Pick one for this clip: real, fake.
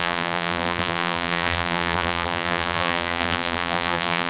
fake